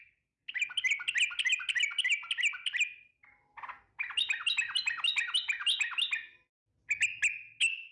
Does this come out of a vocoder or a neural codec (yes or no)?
no